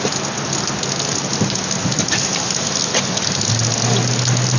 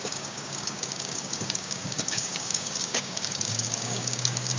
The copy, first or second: second